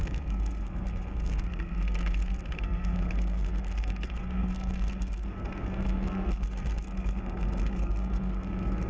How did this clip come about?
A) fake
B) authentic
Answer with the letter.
A